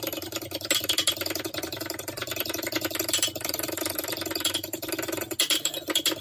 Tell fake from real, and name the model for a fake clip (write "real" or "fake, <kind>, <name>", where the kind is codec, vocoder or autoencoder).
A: real